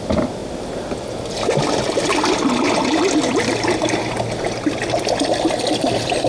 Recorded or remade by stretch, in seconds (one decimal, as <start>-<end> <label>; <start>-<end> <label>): 0.0-6.3 recorded